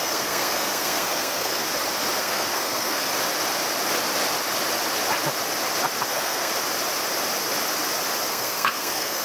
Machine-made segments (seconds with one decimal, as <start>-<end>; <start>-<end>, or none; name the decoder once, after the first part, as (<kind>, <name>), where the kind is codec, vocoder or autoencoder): 0.0-1.6 (codec, SNAC); 2.2-3.1; 6.1-6.5; 8.3-9.2